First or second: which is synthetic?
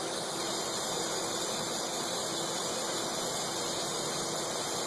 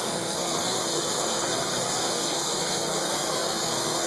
second